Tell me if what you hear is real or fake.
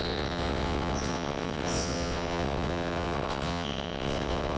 fake